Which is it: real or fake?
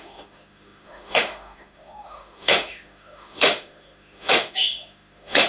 fake